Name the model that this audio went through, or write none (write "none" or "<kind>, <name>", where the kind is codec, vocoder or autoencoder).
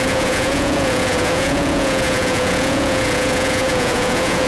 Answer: vocoder, Vocos